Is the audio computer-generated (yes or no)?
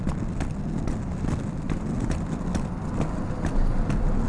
no